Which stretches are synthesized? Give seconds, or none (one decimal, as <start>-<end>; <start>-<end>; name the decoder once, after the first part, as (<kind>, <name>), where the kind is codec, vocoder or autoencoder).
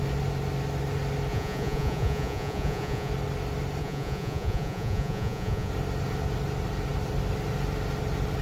1.3-3.1 (vocoder, Vocos); 3.8-5.7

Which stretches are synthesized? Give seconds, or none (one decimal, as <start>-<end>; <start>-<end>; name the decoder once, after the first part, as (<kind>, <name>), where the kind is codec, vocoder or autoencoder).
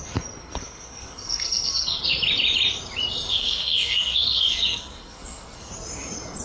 0.4-2.0 (codec, SNAC); 3.3-5.7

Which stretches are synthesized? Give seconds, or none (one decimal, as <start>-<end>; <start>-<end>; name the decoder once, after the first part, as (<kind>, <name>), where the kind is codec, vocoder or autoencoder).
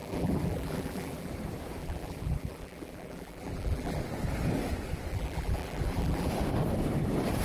0.0-1.3 (vocoder, BigVGAN v2); 1.8-4.0; 5.1-6.3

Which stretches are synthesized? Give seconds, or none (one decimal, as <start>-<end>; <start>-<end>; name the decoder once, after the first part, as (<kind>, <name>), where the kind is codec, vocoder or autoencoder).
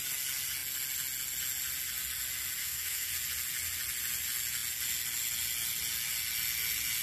2.6-3.1 (autoencoder, DAC-VAE)